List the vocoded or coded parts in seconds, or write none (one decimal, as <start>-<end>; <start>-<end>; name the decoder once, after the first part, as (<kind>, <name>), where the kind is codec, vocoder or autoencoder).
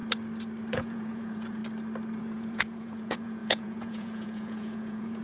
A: 0.7-1.6 (vocoder, Vocos); 2.2-5.2